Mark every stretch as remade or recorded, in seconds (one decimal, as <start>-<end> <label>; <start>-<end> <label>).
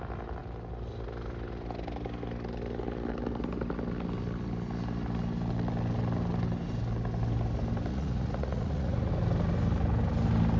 0.0-7.9 recorded; 7.9-9.1 remade; 9.1-10.6 recorded